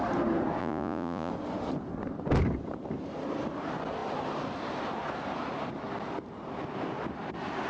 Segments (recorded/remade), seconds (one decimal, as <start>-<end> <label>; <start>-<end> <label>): 0.0-0.6 recorded; 0.6-1.3 remade; 1.3-7.7 recorded